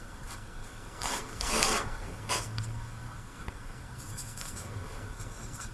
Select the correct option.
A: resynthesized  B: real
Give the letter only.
A